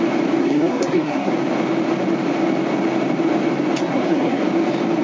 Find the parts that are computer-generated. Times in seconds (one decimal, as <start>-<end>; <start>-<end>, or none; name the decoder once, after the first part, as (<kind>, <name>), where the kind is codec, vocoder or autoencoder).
0.4-1.3 (codec, SNAC); 3.8-4.4

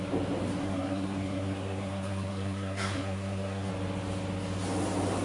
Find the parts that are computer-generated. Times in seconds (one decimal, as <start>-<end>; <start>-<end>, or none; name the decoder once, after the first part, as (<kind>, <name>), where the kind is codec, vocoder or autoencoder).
0.6-3.7 (codec, SNAC)

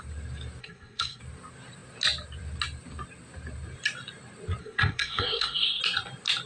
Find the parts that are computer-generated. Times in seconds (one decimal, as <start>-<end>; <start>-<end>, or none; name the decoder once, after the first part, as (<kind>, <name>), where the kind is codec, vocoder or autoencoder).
0.6-1.2 (codec, SNAC); 4.6-5.8